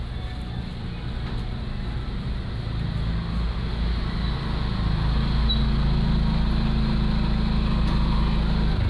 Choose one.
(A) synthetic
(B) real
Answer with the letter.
B